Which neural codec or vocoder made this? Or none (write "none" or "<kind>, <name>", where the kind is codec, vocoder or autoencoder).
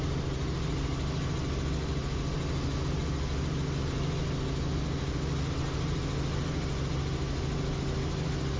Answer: none